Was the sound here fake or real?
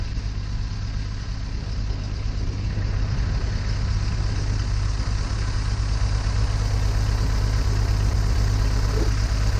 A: real